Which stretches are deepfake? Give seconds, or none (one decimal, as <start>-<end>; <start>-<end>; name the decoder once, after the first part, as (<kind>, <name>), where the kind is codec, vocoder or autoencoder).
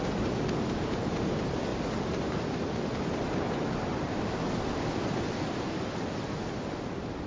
none